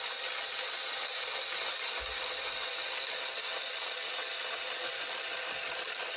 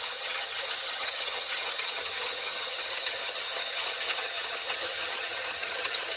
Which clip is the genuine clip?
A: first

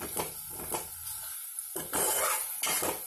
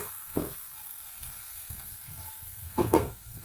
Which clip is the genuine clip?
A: first